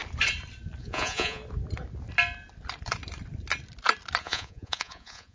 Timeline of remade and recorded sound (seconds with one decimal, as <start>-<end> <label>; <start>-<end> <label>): 0.0-0.8 recorded; 0.8-1.4 remade; 1.4-4.2 recorded; 4.2-5.3 remade

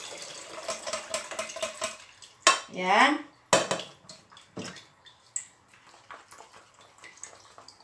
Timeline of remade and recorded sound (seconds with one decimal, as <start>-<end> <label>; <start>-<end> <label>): 0.0-7.8 recorded